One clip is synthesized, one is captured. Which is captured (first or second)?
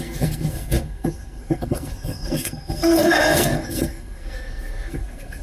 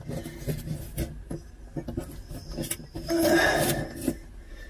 second